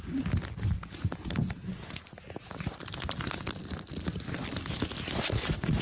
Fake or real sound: real